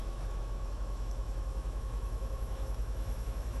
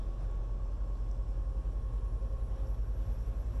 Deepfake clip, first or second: first